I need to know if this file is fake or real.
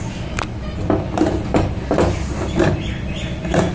real